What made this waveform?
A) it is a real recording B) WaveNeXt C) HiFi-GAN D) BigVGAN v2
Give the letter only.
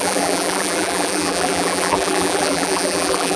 D